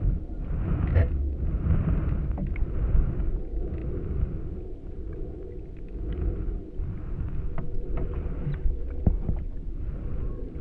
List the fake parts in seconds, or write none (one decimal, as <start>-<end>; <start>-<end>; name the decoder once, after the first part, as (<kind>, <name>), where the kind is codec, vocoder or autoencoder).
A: none